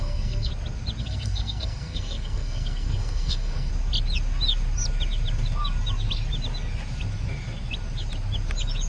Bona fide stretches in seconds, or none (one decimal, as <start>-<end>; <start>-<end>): 0.5-1.0; 3.7-8.9